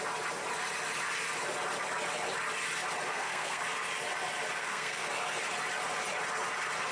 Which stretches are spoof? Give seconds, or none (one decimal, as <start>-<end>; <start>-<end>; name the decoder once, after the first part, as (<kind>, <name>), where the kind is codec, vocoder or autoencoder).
3.1-3.6 (codec, SNAC); 4.6-5.1

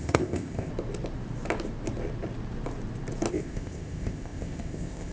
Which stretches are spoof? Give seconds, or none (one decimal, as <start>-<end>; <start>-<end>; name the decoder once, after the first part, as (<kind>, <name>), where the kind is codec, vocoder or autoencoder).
0.0-0.7 (codec, ZipCodec); 3.3-5.1

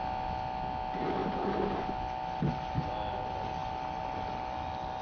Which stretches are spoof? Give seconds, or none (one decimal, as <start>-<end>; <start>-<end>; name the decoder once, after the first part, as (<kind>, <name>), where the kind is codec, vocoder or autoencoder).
none

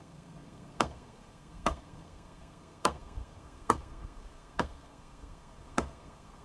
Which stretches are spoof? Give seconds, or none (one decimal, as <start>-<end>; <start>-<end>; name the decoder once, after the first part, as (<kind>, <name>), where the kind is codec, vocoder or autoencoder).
0.0-6.4 (codec, SNAC)

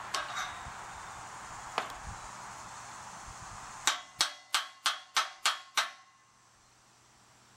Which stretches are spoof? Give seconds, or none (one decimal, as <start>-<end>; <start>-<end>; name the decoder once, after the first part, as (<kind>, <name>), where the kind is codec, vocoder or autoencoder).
none

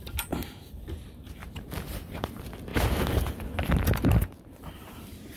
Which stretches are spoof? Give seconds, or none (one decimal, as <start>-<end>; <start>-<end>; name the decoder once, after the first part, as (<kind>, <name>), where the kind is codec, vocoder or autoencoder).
0.4-2.3 (vocoder, BigVGAN v2); 2.7-3.2

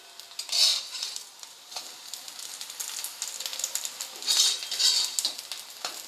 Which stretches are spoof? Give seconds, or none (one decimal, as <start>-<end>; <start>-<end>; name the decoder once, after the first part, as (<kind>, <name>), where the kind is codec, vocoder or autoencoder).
0.7-1.9 (vocoder, BigVGAN v2)

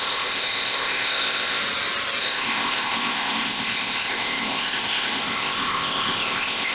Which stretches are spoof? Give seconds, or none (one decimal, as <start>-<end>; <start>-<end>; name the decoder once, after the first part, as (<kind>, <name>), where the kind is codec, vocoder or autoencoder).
0.0-1.6 (codec, ZipCodec); 2.2-6.7